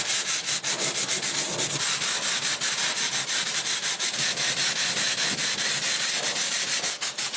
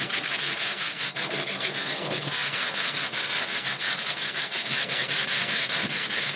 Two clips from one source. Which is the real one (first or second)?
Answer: first